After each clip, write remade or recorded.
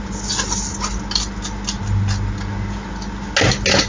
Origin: recorded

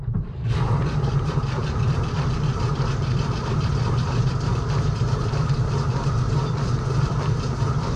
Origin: remade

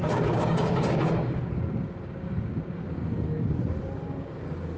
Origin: remade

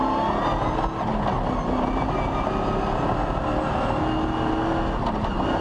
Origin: recorded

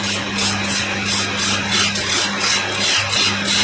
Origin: recorded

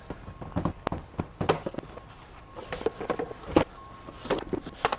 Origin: recorded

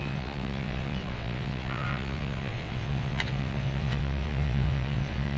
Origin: remade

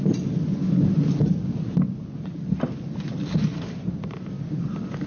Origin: recorded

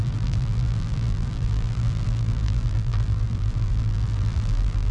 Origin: remade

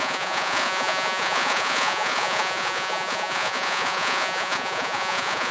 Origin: remade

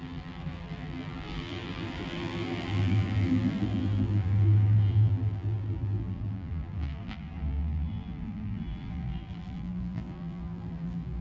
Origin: remade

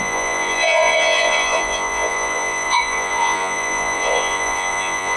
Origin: remade